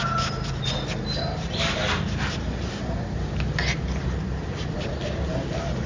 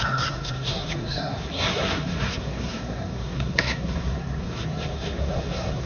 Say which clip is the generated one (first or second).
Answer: second